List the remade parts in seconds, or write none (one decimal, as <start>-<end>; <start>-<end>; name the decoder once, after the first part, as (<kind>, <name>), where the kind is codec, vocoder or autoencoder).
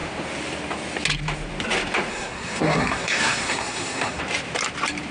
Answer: 2.1-4.2 (codec, SNAC)